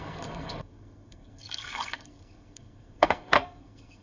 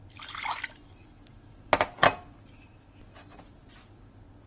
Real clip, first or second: second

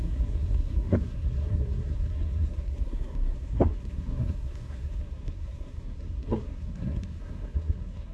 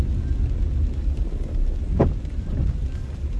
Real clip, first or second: second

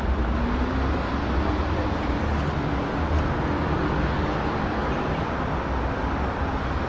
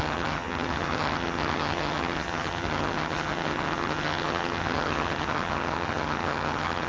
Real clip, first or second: first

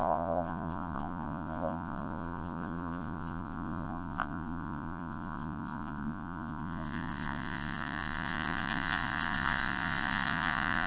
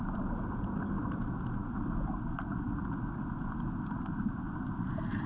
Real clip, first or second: second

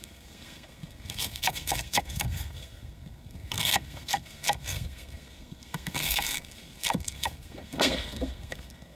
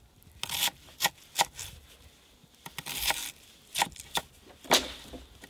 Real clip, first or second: second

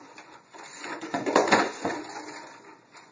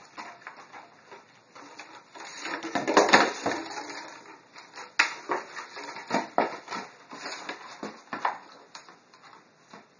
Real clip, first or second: second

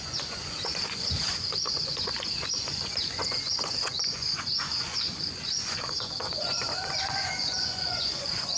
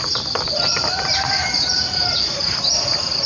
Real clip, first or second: second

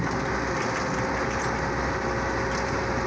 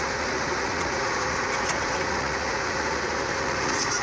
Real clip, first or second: first